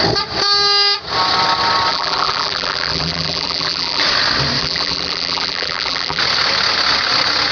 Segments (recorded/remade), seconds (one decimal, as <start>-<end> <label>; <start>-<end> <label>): 0.0-1.9 recorded; 1.9-4.0 remade; 4.0-4.6 recorded; 4.6-6.2 remade; 6.2-7.5 recorded